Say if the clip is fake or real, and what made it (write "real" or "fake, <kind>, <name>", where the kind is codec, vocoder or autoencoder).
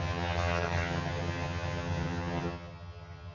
fake, vocoder, HiFi-GAN